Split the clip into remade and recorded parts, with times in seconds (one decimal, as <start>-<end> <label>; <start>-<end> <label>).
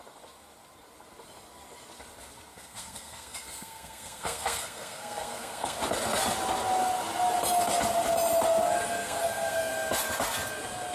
0.0-2.5 recorded; 2.5-5.8 remade; 5.8-9.0 recorded; 9.0-9.7 remade; 9.7-10.9 recorded